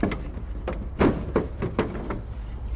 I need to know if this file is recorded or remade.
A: recorded